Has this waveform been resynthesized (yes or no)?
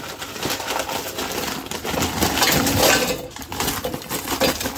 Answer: no